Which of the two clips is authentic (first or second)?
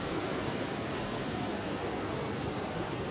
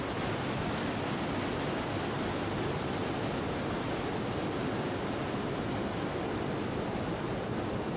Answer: second